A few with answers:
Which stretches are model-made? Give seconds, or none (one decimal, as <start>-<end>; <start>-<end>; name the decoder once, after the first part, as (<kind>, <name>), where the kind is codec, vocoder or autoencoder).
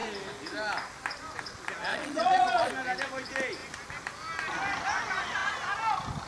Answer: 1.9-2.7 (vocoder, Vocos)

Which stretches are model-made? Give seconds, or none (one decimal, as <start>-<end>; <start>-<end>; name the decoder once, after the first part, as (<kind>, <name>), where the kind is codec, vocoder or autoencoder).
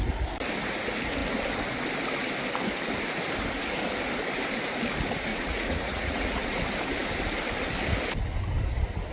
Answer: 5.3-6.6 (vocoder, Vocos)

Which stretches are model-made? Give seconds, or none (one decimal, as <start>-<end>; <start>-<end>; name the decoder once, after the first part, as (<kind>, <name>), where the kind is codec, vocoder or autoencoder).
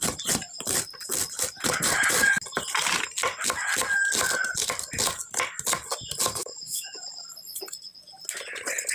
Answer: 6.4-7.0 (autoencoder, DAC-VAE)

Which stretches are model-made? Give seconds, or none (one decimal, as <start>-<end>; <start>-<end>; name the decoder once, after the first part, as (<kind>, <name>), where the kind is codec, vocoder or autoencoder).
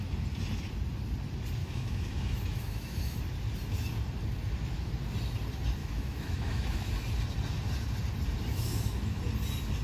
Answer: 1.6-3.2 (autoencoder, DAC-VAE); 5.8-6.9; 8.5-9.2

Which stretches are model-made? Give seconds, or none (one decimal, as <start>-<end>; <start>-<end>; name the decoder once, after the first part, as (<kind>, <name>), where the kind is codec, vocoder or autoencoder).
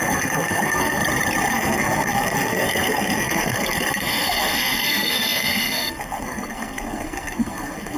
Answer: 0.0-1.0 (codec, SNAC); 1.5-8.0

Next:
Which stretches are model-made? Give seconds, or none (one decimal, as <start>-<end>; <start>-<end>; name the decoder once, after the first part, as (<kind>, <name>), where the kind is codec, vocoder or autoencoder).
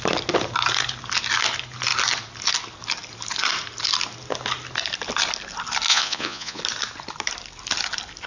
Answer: 5.9-6.6 (vocoder, Vocos)